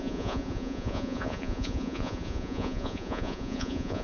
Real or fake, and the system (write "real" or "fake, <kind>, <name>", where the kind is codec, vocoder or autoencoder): fake, vocoder, Vocos